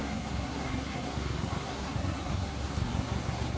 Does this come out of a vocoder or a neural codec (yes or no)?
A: yes